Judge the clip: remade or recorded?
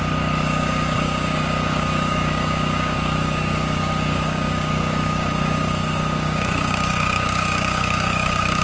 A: remade